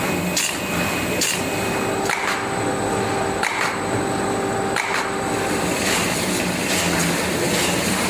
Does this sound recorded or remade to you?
recorded